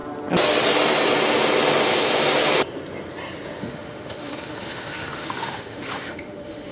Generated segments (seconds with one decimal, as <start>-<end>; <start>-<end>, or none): 3.6-6.7